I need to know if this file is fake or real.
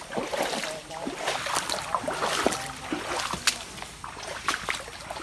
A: real